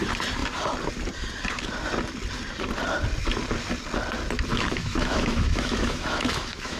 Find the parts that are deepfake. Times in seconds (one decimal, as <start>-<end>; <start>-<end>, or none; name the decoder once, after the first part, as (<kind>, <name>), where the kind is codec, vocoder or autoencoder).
4.5-6.8 (autoencoder, DAC-VAE)